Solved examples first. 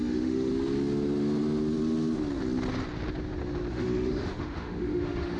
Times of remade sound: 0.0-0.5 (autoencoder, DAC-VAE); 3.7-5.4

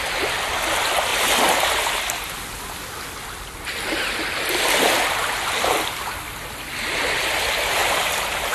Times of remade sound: none

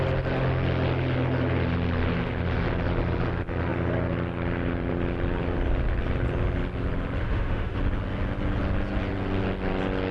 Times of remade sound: 7.2-7.8 (autoencoder, DAC-VAE)

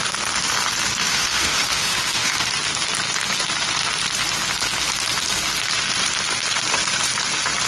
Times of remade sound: 1.0-2.5 (autoencoder, DAC-VAE)

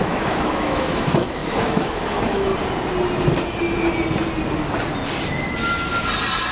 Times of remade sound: 0.0-2.5 (autoencoder, DAC-VAE)

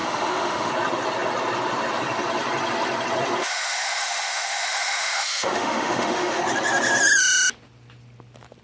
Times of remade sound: 0.0-0.7 (autoencoder, DAC-VAE); 3.4-6.4

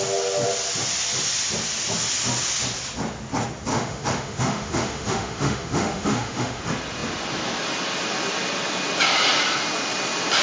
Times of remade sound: 3.7-6.6 (autoencoder, DAC-VAE)

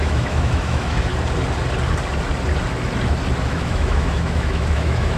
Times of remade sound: 0.0-1.1 (autoencoder, DAC-VAE); 3.4-5.2